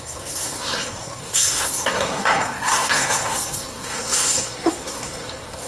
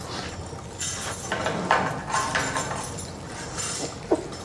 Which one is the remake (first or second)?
first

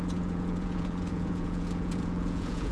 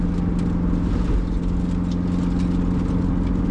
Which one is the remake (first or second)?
first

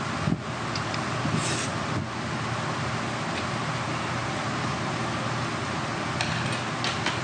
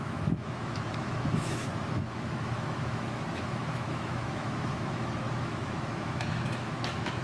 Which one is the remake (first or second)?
second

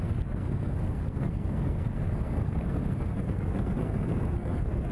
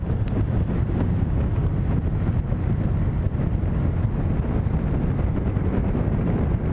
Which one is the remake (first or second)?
first